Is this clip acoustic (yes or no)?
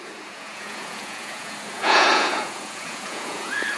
no